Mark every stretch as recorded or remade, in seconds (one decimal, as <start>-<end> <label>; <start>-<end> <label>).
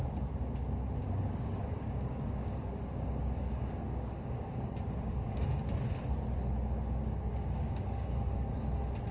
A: 0.0-1.0 recorded; 1.0-5.8 remade; 5.8-7.0 recorded; 7.0-8.5 remade; 8.5-9.1 recorded